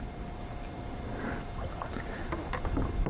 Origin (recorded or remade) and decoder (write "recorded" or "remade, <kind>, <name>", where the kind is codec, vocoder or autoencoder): recorded